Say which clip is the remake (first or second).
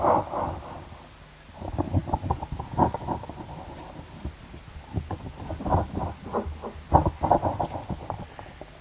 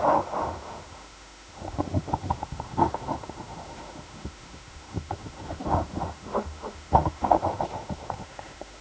second